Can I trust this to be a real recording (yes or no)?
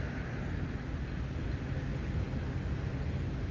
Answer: yes